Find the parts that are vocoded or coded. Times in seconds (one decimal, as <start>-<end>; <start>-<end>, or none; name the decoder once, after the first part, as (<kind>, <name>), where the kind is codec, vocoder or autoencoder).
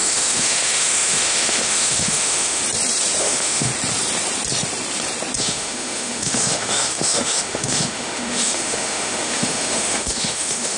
0.0-2.6 (autoencoder, DAC-VAE); 3.2-3.7; 5.4-10.8